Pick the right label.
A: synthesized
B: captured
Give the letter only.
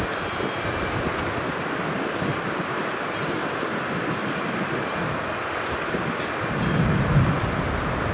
B